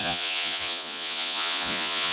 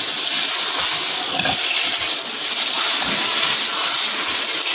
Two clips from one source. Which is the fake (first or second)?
first